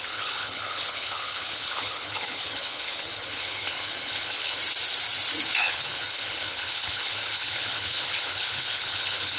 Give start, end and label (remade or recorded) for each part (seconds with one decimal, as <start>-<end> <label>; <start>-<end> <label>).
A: 0.0-4.6 remade; 4.6-5.5 recorded; 5.5-9.4 remade